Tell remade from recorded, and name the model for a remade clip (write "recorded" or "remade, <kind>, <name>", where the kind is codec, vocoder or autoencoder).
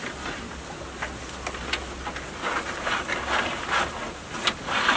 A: recorded